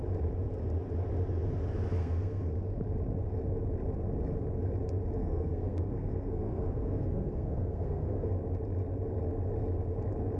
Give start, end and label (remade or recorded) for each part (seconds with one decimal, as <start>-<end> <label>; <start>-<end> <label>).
0.0-2.0 recorded; 2.0-2.5 remade; 2.5-5.2 recorded; 5.2-8.3 remade; 8.3-10.4 recorded